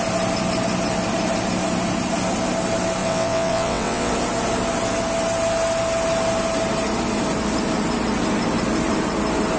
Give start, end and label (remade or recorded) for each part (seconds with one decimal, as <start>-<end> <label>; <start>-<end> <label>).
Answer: 0.0-3.0 recorded; 3.0-4.1 remade; 4.1-9.6 recorded